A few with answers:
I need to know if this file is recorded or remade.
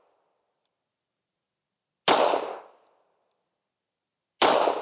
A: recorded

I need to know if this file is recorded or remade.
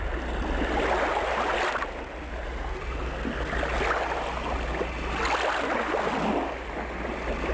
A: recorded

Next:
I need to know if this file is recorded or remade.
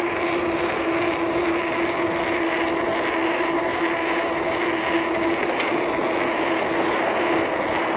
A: recorded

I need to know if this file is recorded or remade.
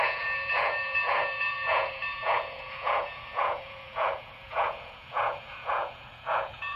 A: remade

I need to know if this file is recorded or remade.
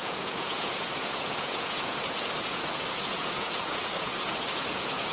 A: remade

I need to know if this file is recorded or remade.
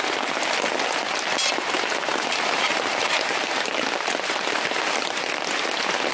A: recorded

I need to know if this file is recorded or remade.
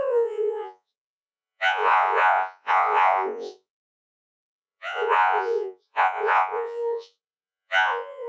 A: remade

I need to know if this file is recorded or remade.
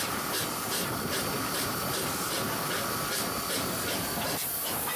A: recorded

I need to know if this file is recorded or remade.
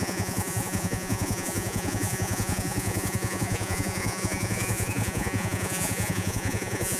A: remade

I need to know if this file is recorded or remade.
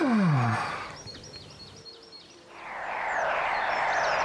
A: recorded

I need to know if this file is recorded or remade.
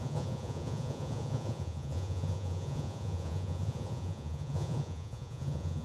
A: remade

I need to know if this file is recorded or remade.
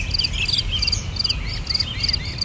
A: recorded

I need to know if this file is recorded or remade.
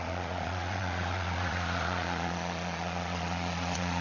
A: remade